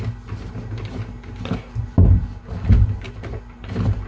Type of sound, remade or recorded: recorded